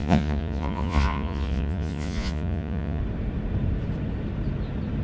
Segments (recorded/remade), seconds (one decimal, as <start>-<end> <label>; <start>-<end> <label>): 0.0-3.0 remade; 3.0-5.0 recorded